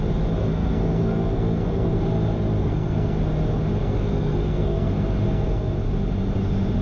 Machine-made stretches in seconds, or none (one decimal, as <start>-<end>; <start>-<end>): 0.4-2.0; 2.6-3.2; 3.8-5.7